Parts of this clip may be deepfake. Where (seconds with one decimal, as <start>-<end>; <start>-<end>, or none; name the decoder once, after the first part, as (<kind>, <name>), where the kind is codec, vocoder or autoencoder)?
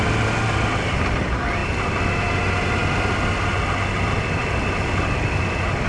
none